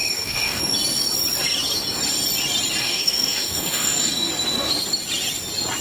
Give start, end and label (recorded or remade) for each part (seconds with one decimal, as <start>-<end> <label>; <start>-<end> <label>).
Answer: 0.0-0.6 remade; 0.6-2.8 recorded; 2.8-4.3 remade; 4.3-5.8 recorded